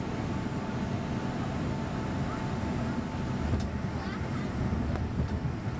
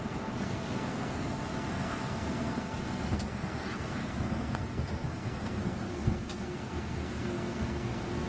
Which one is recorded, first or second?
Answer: first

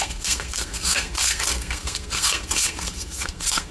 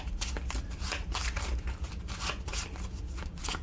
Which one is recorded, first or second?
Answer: second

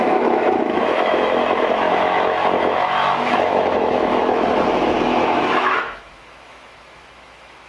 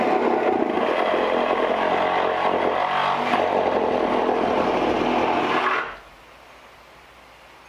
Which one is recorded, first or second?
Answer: second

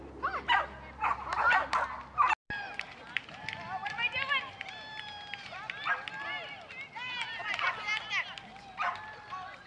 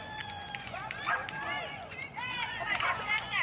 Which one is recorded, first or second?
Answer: first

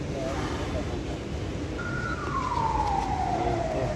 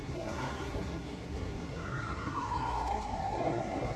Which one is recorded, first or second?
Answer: first